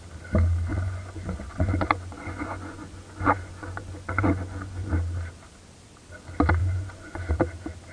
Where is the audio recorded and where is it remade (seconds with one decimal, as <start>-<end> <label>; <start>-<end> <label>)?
0.0-0.7 recorded; 0.7-4.9 remade; 4.9-6.6 recorded; 6.6-7.3 remade; 7.3-7.9 recorded